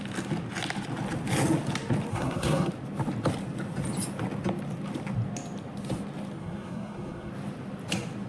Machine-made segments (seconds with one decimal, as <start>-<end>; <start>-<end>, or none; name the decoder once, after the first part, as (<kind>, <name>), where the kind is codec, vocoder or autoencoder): 2.1-2.7 (codec, SNAC); 6.4-7.3